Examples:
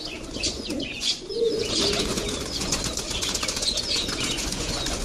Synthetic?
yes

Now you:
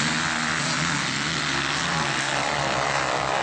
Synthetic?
no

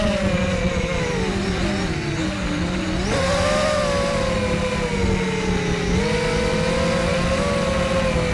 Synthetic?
no